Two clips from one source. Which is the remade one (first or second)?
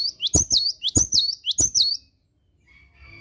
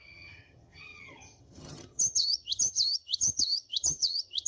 second